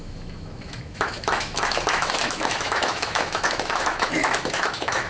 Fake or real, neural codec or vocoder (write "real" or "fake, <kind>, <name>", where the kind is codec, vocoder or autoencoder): fake, autoencoder, DAC-VAE